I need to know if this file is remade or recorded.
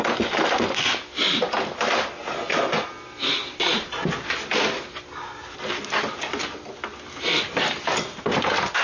recorded